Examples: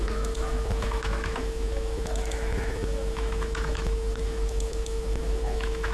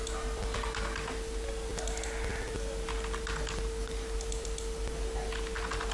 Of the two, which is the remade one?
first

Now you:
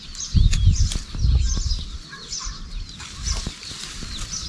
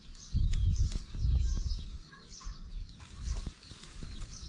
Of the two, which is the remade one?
second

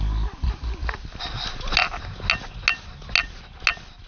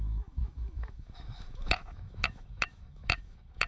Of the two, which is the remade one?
second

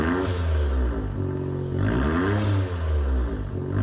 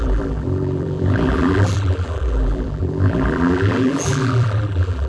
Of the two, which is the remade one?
second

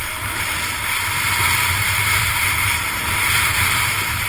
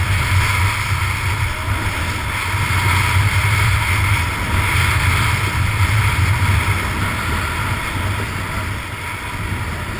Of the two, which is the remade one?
first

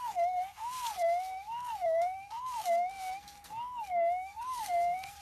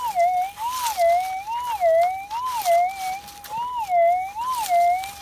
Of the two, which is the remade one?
first